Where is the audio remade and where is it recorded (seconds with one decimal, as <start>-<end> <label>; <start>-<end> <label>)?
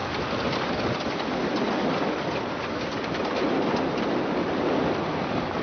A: 0.0-5.6 recorded